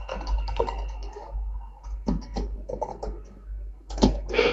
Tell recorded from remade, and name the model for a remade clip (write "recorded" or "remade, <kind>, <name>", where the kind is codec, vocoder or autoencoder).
remade, codec, SNAC